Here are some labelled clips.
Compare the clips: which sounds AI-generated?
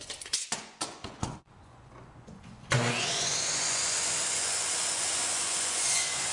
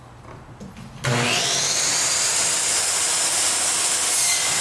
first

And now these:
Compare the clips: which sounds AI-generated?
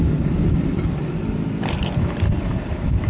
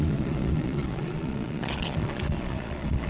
second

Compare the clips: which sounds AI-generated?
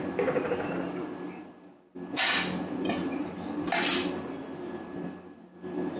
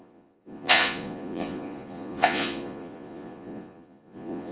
second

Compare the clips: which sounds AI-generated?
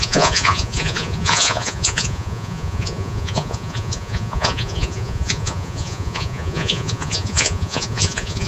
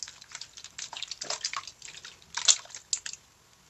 first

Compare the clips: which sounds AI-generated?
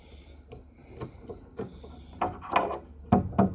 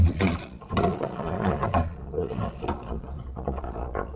second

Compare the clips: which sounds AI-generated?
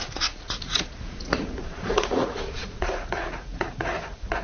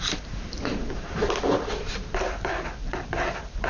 first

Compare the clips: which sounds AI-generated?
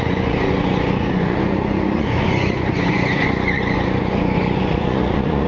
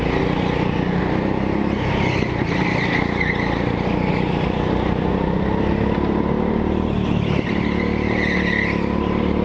first